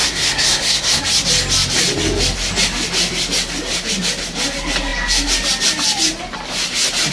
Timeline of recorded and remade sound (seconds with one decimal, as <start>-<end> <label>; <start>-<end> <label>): 0.0-1.0 remade; 1.0-7.1 recorded